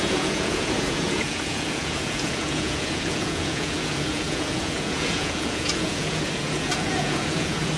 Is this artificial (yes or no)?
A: yes